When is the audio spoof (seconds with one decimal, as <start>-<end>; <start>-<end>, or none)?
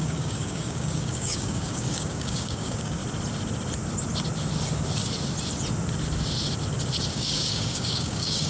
0.0-3.0; 7.1-8.5